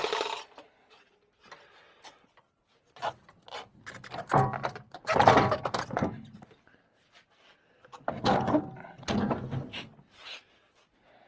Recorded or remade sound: recorded